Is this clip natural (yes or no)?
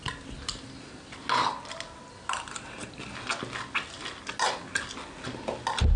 yes